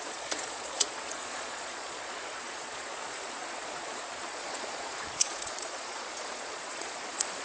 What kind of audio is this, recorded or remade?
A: remade